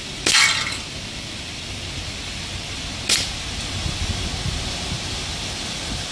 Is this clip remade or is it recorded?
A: recorded